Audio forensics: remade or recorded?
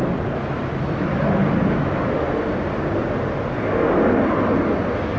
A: recorded